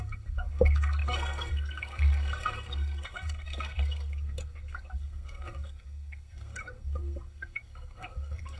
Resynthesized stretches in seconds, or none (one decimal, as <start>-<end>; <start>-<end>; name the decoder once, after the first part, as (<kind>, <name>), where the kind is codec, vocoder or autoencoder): 0.0-8.6 (codec, SNAC)